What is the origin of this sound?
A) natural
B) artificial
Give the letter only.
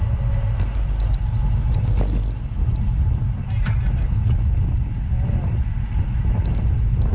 A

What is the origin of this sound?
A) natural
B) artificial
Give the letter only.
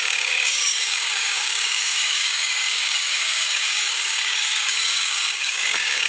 B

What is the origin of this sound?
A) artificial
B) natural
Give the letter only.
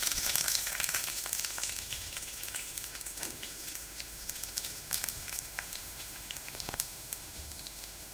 A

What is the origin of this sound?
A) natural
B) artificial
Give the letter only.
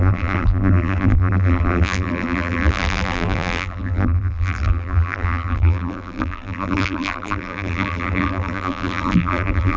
B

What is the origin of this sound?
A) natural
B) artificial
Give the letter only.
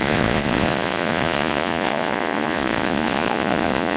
B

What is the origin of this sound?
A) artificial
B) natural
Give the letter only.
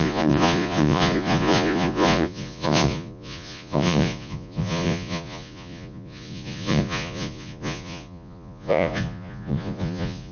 A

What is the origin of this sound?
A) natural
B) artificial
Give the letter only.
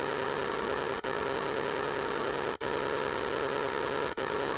B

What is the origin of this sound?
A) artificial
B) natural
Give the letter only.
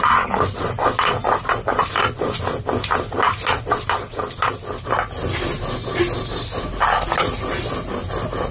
B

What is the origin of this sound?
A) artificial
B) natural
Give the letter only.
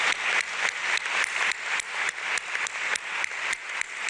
B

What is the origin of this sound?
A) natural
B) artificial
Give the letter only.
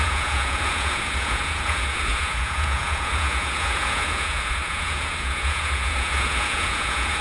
B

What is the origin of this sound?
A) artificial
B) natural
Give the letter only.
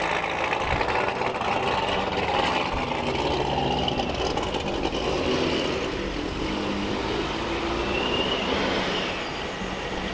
B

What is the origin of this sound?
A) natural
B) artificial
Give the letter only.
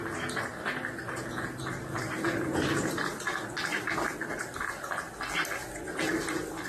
A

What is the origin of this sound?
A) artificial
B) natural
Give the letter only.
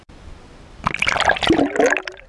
B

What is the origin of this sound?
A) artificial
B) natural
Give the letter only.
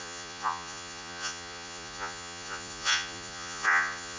A